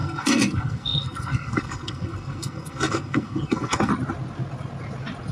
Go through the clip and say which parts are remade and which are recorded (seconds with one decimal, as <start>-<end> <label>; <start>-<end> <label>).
0.0-3.9 remade; 3.9-5.3 recorded